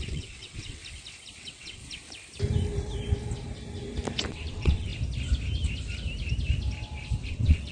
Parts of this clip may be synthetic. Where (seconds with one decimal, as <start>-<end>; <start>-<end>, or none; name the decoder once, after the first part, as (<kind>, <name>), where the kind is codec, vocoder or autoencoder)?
0.0-0.8 (vocoder, WaveNeXt); 1.4-1.8; 4.3-4.9; 7.3-7.7